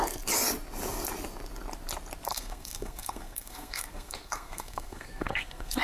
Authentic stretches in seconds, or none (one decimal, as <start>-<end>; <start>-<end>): 0.0-2.3